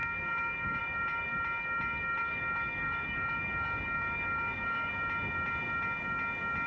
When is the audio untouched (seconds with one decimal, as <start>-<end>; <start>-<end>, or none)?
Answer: 0.8-2.2; 4.9-6.7